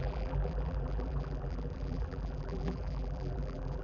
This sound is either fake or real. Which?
fake